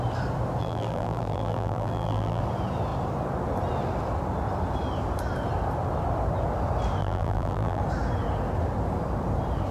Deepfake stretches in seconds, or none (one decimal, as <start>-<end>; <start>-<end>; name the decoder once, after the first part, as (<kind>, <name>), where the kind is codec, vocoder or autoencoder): 0.6-2.4 (vocoder, BigVGAN v2); 7.0-7.8